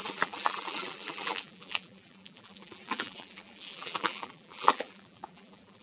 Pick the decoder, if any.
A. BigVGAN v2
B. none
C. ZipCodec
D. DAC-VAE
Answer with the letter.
A